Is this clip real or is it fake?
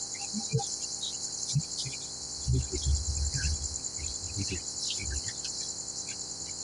real